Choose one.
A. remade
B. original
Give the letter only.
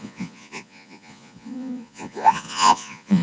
A